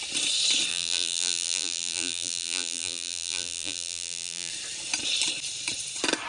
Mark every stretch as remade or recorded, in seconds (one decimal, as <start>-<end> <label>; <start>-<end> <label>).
0.0-0.7 recorded; 0.7-4.5 remade; 4.5-6.3 recorded